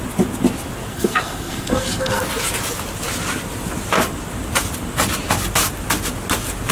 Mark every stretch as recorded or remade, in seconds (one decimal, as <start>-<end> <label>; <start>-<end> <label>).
0.0-0.9 recorded; 0.9-2.2 remade; 2.2-6.7 recorded